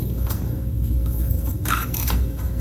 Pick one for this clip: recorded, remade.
remade